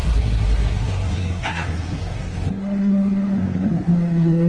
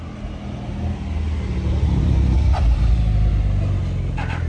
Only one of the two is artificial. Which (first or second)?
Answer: first